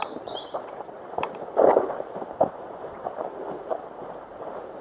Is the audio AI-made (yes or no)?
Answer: yes